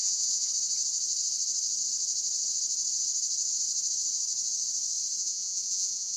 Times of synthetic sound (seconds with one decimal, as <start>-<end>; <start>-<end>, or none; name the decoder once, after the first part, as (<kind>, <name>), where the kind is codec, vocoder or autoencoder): 0.0-0.5 (vocoder, Vocos); 5.2-6.2